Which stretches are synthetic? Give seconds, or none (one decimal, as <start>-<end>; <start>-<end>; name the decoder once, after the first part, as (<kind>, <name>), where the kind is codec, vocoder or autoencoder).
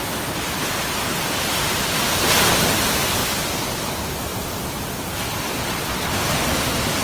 1.1-2.3 (vocoder, BigVGAN v2); 3.2-3.9; 4.3-6.2